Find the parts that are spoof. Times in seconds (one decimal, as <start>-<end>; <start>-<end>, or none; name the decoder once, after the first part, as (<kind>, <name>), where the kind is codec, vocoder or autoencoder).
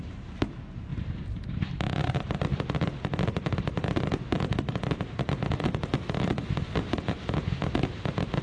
0.0-2.5 (vocoder, BigVGAN v2); 3.6-8.4